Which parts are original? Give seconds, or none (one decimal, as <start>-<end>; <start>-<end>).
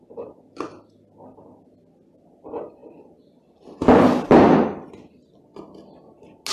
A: 0.0-6.5